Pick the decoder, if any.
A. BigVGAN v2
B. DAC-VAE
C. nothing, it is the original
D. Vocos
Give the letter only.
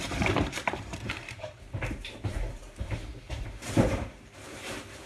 A